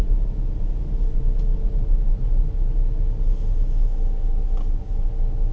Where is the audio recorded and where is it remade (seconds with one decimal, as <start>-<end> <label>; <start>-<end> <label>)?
0.0-5.5 recorded

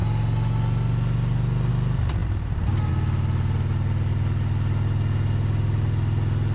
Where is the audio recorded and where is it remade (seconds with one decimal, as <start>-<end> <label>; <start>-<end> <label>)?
0.0-6.5 recorded

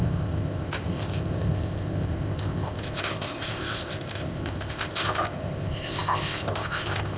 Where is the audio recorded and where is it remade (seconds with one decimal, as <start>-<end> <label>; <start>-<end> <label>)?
0.0-7.2 remade

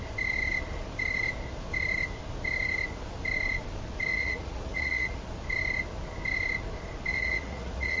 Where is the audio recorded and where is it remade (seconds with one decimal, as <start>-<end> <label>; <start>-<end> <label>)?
0.0-4.1 recorded; 4.1-5.2 remade; 5.2-7.1 recorded; 7.1-8.0 remade

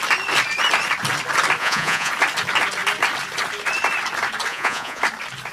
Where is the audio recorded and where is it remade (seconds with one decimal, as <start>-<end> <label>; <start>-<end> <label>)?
0.0-1.6 recorded; 1.6-2.1 remade; 2.1-4.5 recorded; 4.5-5.0 remade; 5.0-5.5 recorded

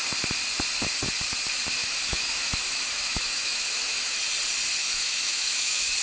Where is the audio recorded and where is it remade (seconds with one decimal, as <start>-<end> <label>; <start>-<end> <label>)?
0.0-1.8 recorded; 1.8-4.2 remade; 4.2-4.8 recorded; 4.8-6.0 remade